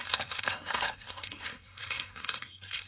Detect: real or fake fake